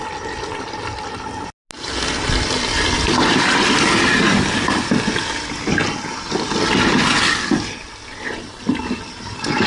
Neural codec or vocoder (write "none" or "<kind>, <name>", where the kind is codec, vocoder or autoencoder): none